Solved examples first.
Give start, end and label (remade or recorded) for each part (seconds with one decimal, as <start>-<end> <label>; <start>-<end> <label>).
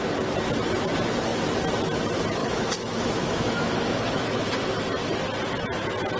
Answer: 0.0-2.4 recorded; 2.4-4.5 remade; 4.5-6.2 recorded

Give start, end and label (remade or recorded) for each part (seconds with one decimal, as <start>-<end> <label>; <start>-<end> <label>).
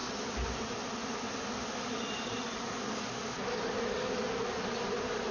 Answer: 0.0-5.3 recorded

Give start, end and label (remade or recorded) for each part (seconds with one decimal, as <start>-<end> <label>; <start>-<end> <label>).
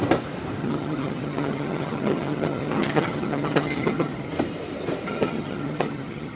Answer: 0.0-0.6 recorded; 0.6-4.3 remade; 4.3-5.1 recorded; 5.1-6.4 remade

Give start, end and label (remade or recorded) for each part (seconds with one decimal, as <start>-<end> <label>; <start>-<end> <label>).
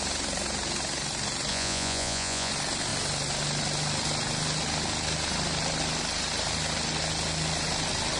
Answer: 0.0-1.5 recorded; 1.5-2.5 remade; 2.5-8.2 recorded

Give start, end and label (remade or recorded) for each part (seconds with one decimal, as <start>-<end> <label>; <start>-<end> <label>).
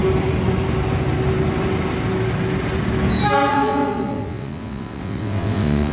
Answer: 0.0-3.5 recorded; 3.5-5.9 remade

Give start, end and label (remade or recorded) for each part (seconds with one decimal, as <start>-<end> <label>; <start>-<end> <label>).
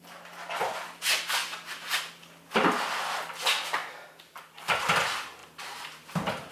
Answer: 0.0-5.4 recorded; 5.4-6.5 remade